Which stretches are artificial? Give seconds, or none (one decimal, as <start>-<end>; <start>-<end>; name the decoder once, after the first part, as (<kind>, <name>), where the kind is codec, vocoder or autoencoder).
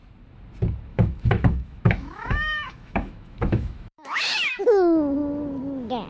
0.9-4.6 (autoencoder, DAC-VAE)